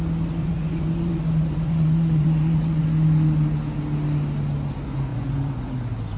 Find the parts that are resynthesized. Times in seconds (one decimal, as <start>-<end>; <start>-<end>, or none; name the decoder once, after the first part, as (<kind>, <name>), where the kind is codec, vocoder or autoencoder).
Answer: 0.4-2.8 (vocoder, Vocos); 5.1-5.7